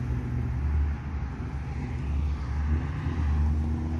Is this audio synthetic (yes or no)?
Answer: no